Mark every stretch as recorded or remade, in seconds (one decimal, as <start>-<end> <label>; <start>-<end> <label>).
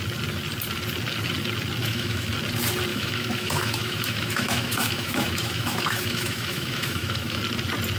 0.0-1.8 recorded; 1.8-2.3 remade; 2.3-2.9 recorded; 2.9-7.4 remade; 7.4-8.0 recorded